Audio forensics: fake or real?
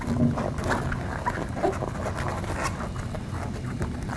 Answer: real